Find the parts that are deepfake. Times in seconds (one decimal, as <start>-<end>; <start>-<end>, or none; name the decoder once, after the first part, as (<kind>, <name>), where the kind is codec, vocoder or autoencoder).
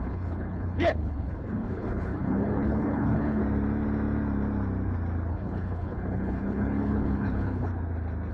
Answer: 0.0-3.4 (codec, HILCodec); 5.3-7.7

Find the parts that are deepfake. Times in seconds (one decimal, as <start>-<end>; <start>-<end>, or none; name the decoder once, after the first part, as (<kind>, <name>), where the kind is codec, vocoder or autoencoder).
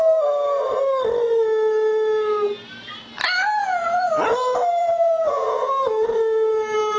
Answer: 3.6-4.1 (vocoder, Vocos); 4.8-5.7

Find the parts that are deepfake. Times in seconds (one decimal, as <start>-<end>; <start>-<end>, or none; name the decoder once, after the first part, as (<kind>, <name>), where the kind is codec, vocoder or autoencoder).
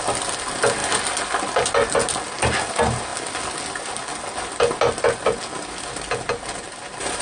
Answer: none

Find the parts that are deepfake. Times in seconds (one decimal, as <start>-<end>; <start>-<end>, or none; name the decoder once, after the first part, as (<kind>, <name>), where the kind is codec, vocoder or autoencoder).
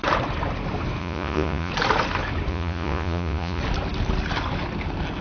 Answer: 1.0-1.7 (vocoder, Vocos); 2.5-3.6